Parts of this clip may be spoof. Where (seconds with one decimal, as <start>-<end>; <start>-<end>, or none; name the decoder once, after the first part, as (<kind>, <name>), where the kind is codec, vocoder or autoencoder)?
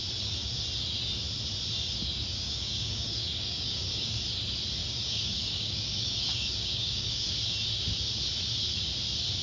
2.2-4.2 (codec, DAC); 4.8-7.3